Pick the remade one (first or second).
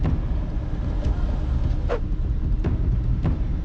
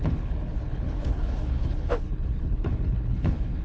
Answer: second